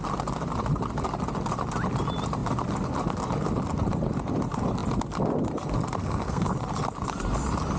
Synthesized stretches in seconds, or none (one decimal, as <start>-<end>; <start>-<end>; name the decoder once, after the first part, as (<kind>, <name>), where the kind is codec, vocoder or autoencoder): 6.0-6.5 (codec, SNAC)